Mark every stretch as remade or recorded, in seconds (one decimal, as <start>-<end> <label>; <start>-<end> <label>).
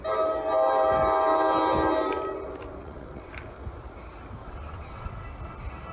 0.0-2.8 recorded; 2.8-3.3 remade; 3.3-4.4 recorded; 4.4-5.1 remade; 5.1-5.9 recorded